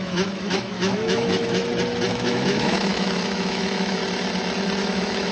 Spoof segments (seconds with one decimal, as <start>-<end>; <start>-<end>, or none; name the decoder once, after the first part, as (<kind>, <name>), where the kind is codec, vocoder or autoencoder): 0.0-1.6 (autoencoder, DAC-VAE); 2.1-4.0; 4.8-5.3